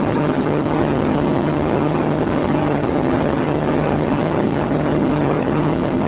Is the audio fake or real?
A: fake